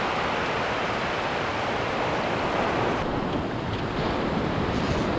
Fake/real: real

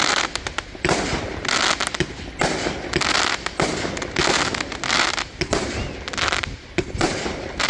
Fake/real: real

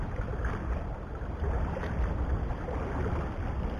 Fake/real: real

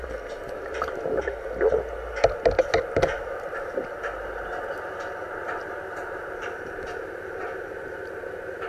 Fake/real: real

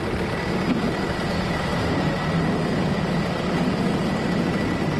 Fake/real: real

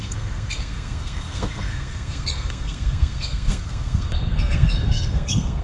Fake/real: fake